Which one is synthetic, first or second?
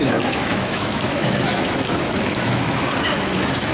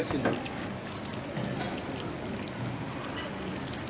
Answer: first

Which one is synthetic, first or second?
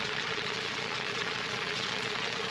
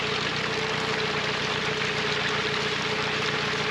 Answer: first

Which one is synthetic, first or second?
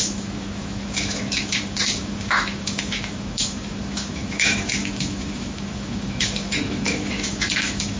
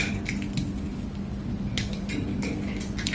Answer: first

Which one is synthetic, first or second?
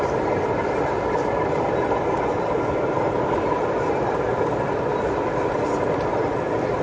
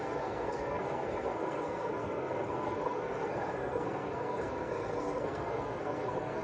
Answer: second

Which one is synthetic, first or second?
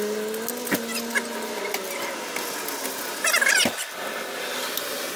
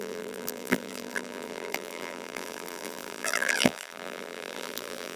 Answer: second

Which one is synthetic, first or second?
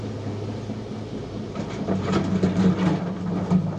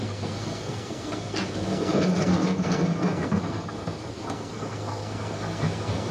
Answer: second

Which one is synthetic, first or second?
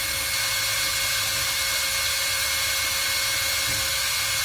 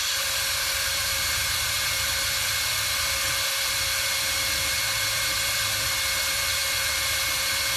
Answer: second